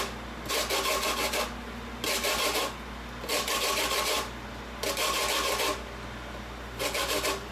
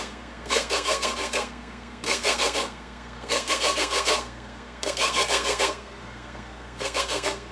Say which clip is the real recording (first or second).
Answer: first